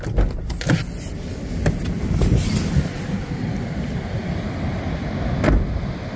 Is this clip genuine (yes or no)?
yes